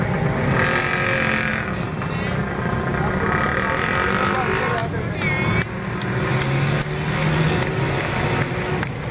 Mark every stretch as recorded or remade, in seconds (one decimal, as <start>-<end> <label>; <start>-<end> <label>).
0.0-1.5 recorded; 1.5-2.6 remade; 2.6-9.1 recorded